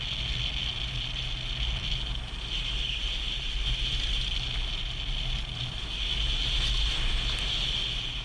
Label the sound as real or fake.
real